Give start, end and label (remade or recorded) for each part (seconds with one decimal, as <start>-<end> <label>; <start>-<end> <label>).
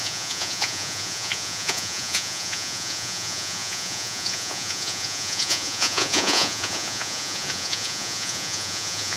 0.0-9.2 remade